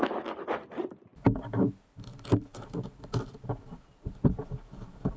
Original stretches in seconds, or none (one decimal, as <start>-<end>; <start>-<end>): 0.0-5.2